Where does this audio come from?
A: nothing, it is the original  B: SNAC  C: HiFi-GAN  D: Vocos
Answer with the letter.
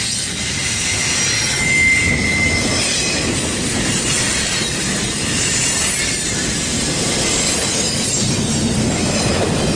A